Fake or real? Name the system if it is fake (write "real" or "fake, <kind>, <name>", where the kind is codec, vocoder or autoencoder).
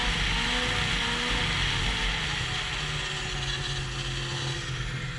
real